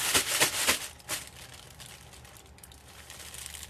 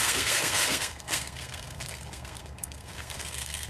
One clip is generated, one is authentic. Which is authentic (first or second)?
first